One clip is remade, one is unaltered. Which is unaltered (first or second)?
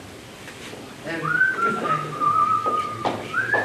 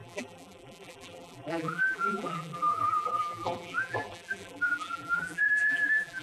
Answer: first